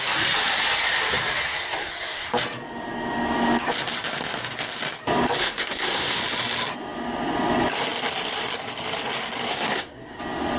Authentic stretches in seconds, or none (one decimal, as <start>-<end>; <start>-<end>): 0.0-1.5; 2.3-5.4; 6.2-9.5; 10.2-10.6